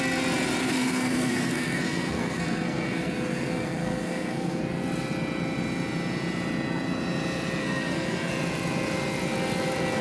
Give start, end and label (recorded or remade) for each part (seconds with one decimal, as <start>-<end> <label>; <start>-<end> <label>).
0.0-0.6 recorded; 0.6-4.6 remade; 4.6-7.6 recorded; 7.6-8.3 remade; 8.3-10.0 recorded